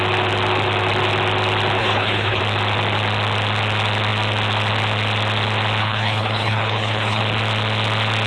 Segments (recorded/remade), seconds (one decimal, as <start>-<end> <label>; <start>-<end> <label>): 0.0-1.8 recorded; 1.8-2.4 remade; 2.4-5.8 recorded; 5.8-7.2 remade; 7.2-8.3 recorded